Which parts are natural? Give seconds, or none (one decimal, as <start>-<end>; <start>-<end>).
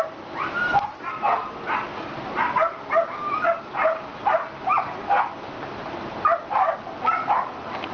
0.0-7.9